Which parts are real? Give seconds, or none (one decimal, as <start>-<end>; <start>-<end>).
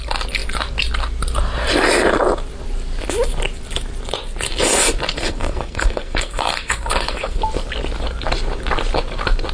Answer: 0.0-5.1; 7.4-9.5